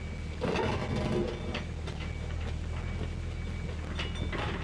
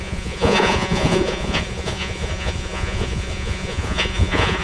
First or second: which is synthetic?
second